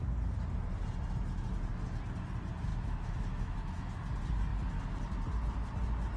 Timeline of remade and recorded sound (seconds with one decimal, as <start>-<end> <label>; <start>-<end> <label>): 0.0-2.7 recorded; 2.7-3.9 remade; 3.9-6.2 recorded